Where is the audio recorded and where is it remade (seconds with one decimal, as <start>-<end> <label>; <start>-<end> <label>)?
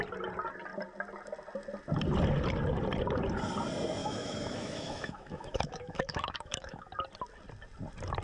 0.0-4.0 recorded; 4.0-6.9 remade; 6.9-8.2 recorded